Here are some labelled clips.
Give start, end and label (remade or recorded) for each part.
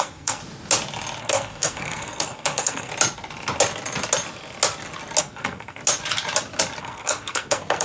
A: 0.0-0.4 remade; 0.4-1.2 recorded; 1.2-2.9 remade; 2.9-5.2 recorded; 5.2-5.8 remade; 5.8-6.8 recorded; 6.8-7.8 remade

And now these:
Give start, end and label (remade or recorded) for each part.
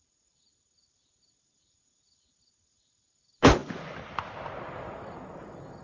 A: 0.0-5.8 recorded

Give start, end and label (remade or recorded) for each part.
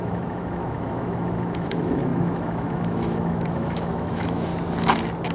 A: 0.0-4.5 remade; 4.5-5.3 recorded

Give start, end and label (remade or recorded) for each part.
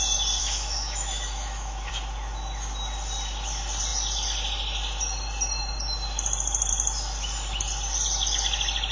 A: 0.0-0.4 recorded; 0.4-1.9 remade; 1.9-8.9 recorded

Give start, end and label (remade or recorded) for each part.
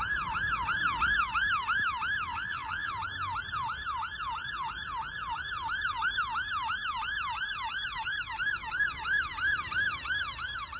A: 0.0-2.3 recorded; 2.3-2.9 remade; 2.9-10.8 recorded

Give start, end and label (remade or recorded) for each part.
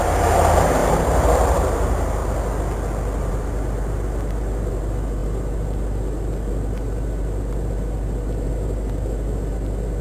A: 0.0-2.2 remade; 2.2-3.3 recorded; 3.3-10.0 remade